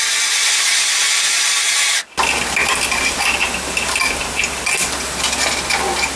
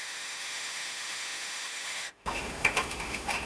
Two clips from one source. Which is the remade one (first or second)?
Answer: second